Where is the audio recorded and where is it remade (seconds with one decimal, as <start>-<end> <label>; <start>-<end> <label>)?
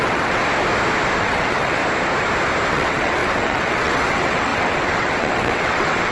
0.0-0.4 remade; 0.4-1.2 recorded; 1.2-1.8 remade; 1.8-2.7 recorded; 2.7-6.1 remade